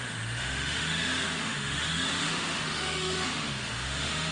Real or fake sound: fake